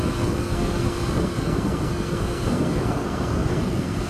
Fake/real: fake